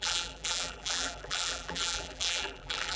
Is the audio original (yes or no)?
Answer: no